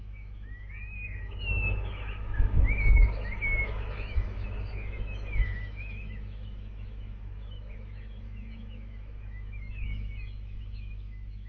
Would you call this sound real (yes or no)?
no